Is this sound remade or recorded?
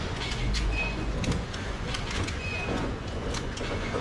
remade